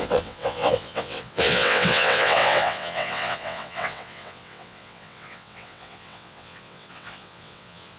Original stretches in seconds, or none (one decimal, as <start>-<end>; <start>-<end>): none

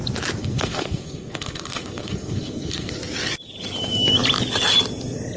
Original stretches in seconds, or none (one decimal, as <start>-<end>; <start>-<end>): 0.0-0.4; 2.9-5.4

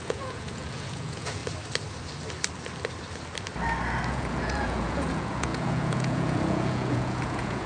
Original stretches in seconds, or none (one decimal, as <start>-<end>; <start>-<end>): 1.4-4.1

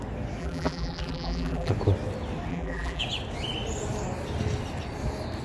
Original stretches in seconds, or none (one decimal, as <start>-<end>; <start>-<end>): 0.0-0.4; 1.7-2.5; 3.0-5.4